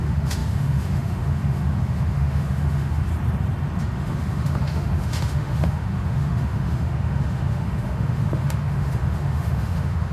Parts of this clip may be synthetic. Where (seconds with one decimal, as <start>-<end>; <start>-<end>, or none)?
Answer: 0.0-3.1; 3.8-10.1